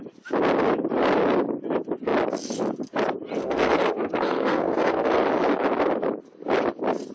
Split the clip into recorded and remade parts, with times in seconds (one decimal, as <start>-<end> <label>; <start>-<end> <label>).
0.0-3.4 recorded; 3.4-5.2 remade; 5.2-7.1 recorded